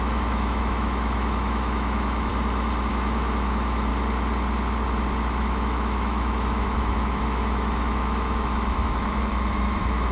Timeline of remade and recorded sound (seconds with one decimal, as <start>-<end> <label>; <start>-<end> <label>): 0.0-2.3 remade; 2.3-2.9 recorded; 2.9-3.9 remade; 3.9-5.4 recorded; 5.4-10.1 remade